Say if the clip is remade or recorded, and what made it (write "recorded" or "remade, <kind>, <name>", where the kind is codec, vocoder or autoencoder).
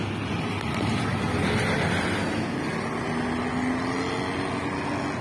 recorded